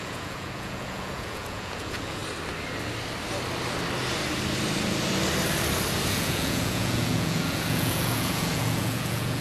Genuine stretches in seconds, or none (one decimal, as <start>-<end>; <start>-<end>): 2.2-6.1